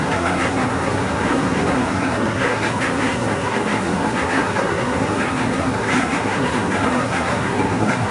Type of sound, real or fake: fake